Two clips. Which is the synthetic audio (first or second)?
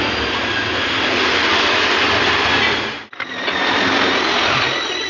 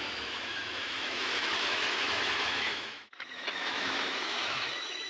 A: second